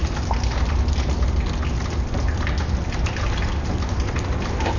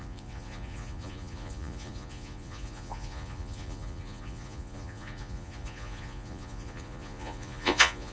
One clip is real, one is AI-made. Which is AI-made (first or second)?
second